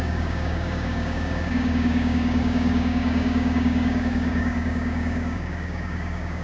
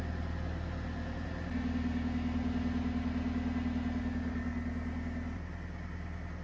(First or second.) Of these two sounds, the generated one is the first